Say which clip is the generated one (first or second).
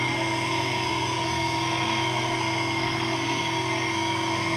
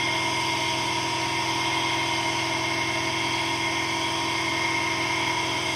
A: first